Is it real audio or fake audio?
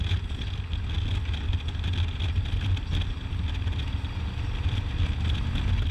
real